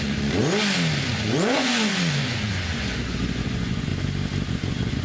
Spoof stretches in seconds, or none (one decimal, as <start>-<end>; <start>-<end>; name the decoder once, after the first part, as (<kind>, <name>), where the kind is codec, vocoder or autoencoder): 0.0-0.4 (vocoder, Vocos); 1.1-3.9; 4.5-5.0